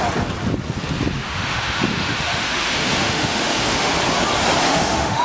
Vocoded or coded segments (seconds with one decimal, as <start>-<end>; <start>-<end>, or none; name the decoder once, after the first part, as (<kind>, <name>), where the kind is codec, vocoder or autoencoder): 1.2-3.9 (autoencoder, DAC-VAE); 4.6-5.2